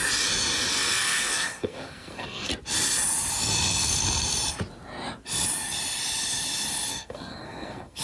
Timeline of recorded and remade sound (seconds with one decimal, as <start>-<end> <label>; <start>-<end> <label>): 0.0-0.7 recorded; 0.7-2.5 remade; 2.5-6.9 recorded; 6.9-8.0 remade